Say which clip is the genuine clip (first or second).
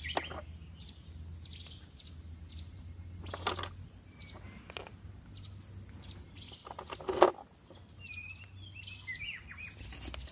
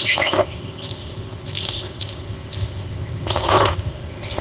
first